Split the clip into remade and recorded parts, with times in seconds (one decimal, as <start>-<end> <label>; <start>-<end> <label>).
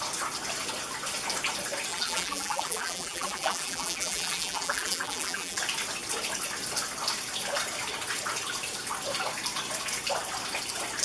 0.0-1.9 recorded; 1.9-5.6 remade; 5.6-11.0 recorded